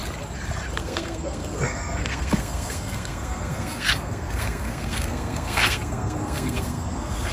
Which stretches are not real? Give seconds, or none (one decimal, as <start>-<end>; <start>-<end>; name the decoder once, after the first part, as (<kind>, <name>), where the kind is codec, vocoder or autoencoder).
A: 0.8-7.3 (codec, SNAC)